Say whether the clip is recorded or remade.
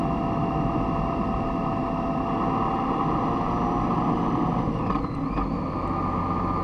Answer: recorded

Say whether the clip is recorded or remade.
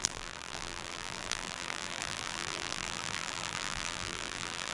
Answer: remade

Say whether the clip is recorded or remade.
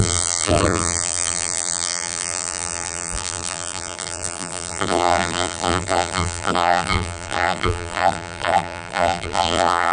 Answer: remade